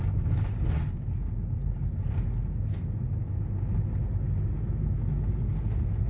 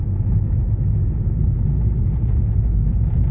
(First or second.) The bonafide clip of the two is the first